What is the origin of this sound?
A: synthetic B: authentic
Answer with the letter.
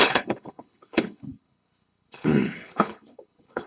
A